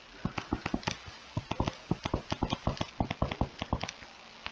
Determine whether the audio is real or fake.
real